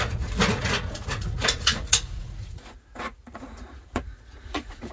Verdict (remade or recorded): remade